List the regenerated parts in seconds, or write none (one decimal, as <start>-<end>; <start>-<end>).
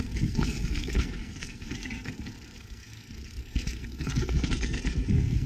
0.0-5.5